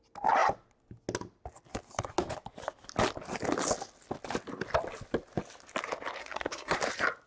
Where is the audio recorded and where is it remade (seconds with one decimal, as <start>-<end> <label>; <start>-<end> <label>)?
0.0-6.2 recorded; 6.2-6.8 remade; 6.8-7.3 recorded